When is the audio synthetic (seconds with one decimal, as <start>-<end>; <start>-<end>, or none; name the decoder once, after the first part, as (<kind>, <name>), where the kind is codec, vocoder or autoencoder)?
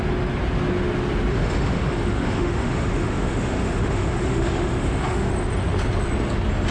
1.3-5.3 (autoencoder, DAC-VAE)